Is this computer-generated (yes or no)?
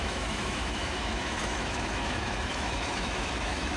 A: yes